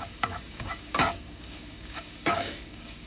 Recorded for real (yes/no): no